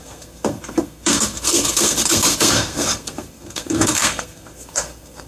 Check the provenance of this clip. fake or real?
fake